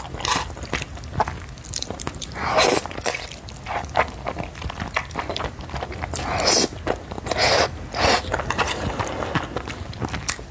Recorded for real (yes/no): yes